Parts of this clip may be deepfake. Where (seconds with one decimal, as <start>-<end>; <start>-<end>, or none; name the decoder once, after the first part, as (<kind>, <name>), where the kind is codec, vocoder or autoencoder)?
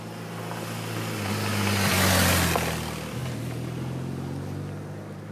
none